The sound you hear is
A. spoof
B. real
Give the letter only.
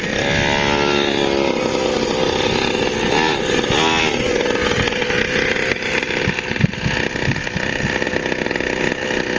B